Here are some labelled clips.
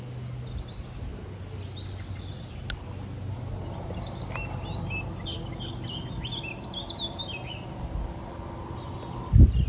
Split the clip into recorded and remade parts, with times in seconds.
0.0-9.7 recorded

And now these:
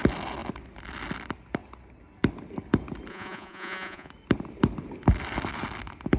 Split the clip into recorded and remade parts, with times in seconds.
0.0-3.1 recorded; 3.1-4.1 remade; 4.1-6.2 recorded

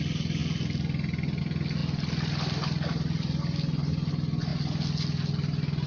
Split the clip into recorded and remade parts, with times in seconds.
0.0-5.9 recorded